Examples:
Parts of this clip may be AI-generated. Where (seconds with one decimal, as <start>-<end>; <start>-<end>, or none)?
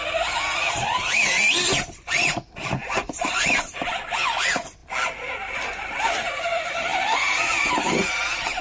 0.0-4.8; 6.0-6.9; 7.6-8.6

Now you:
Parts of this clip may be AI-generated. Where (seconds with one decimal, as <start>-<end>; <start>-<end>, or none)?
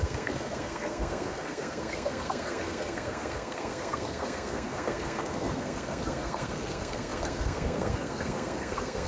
0.0-9.1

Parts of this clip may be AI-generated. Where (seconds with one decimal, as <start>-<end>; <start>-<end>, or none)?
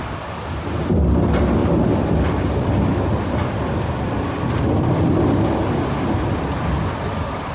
none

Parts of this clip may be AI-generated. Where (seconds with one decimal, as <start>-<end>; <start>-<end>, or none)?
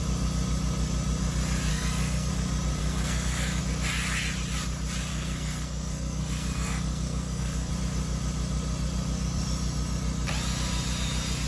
1.7-2.3; 2.8-3.6; 5.1-7.7